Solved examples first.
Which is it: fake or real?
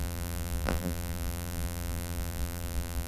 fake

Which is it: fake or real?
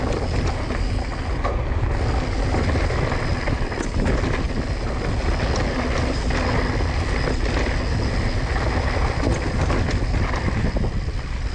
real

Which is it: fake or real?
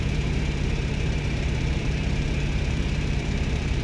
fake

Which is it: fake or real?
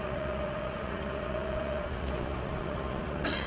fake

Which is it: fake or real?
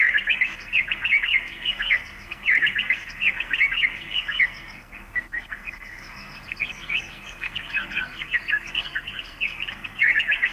fake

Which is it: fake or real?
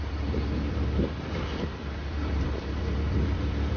fake